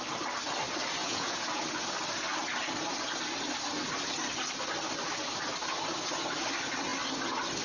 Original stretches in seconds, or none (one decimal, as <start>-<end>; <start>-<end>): 0.0-1.0; 1.6-7.6